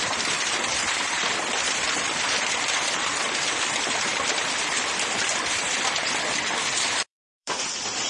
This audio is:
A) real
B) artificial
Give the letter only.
B